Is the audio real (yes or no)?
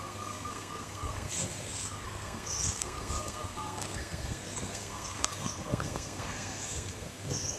no